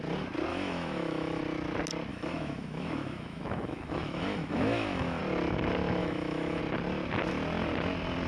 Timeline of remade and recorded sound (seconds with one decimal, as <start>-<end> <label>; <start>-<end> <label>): 0.0-0.5 recorded; 0.5-1.4 remade; 1.4-2.1 recorded; 2.1-5.2 remade; 5.2-6.0 recorded; 6.0-6.6 remade; 6.6-8.3 recorded